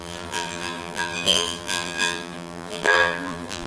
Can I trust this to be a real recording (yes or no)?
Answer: no